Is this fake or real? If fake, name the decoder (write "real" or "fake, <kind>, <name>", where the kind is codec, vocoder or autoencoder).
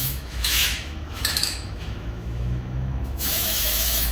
fake, autoencoder, DAC-VAE